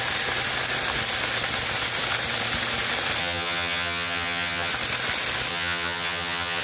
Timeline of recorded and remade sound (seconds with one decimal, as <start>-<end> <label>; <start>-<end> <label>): 0.0-3.2 recorded; 3.2-4.7 remade; 4.7-5.5 recorded; 5.5-6.6 remade